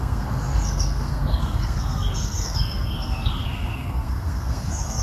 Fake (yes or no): yes